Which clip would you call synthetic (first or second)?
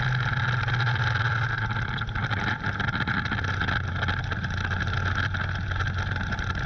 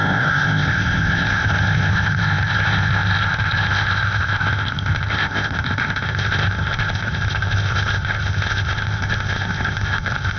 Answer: second